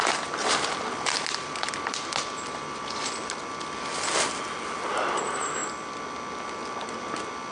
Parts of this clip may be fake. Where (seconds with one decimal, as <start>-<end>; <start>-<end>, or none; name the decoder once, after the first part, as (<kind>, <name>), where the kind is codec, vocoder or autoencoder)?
none